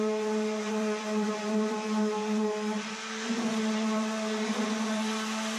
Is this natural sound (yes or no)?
no